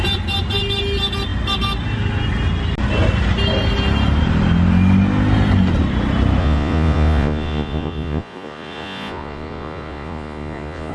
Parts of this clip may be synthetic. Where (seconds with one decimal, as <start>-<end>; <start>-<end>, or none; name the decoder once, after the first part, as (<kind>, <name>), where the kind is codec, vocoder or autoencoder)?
6.4-10.9 (vocoder, Vocos)